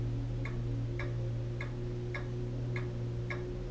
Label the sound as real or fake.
real